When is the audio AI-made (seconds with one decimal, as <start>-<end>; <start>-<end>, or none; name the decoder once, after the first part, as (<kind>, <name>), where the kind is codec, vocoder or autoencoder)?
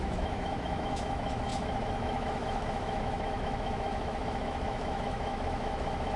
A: 0.0-6.2 (autoencoder, DAC-VAE)